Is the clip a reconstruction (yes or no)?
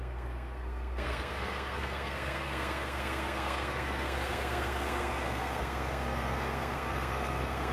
yes